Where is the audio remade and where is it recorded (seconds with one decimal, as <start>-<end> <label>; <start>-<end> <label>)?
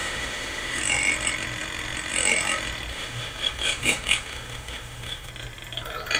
0.0-0.8 remade; 0.8-2.9 recorded; 2.9-5.3 remade; 5.3-6.2 recorded